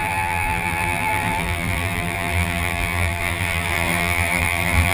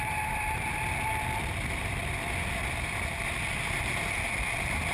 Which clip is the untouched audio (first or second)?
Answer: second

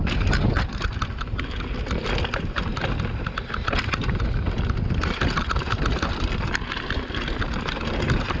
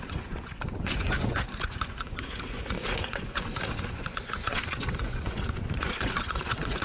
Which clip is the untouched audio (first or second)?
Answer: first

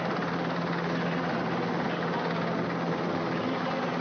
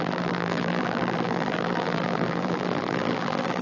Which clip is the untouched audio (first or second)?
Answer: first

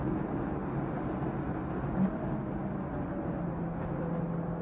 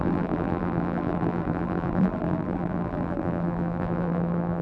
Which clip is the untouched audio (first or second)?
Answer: first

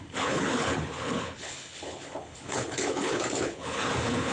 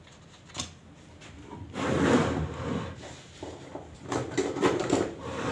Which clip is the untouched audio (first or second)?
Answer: second